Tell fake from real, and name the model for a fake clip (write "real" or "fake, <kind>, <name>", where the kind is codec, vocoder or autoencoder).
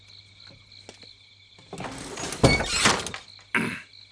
real